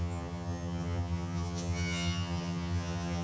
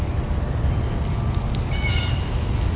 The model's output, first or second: first